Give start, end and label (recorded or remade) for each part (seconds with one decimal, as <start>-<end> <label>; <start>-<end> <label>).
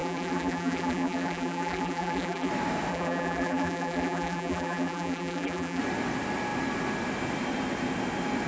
0.0-2.5 remade; 2.5-2.9 recorded; 2.9-5.8 remade; 5.8-8.5 recorded